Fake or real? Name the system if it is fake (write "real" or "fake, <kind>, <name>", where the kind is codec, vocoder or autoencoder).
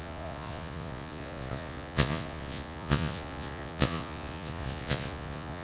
fake, vocoder, Vocos